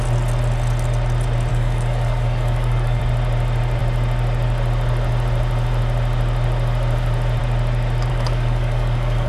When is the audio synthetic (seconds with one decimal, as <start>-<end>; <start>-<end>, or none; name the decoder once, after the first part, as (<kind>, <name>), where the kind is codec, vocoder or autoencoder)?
1.5-3.0 (codec, DAC); 8.1-9.3